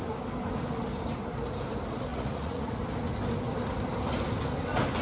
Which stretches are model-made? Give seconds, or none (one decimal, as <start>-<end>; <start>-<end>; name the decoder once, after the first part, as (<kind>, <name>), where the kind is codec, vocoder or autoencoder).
2.1-2.7 (vocoder, Vocos)